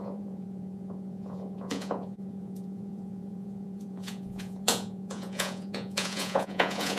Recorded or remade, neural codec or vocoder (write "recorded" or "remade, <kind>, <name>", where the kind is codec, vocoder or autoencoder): remade, vocoder, Vocos